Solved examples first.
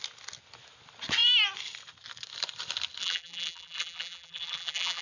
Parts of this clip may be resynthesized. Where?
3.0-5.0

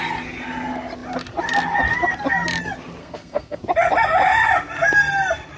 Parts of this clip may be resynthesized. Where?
3.0-3.6

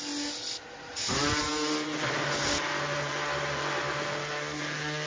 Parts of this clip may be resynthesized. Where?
0.9-1.5

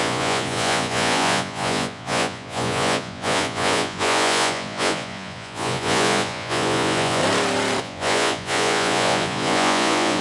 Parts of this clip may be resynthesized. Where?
0.0-7.2; 7.8-10.2

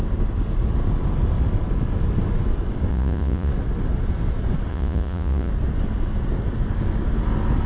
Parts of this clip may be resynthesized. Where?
2.9-3.5; 4.7-5.5

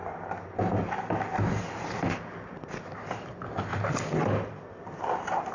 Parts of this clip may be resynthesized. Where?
none

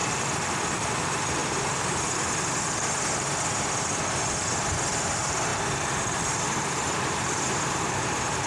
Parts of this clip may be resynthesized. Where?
0.7-8.5

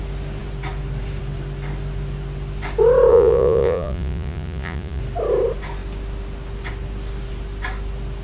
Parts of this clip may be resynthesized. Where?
3.1-5.0